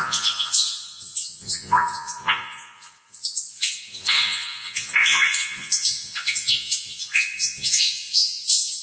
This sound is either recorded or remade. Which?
remade